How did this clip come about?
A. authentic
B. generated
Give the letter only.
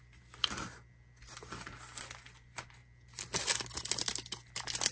A